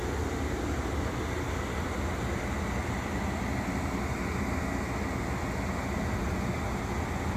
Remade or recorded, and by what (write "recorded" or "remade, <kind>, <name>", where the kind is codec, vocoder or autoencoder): recorded